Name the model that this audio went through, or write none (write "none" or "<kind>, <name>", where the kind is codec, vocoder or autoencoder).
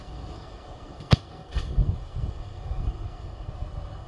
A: codec, SNAC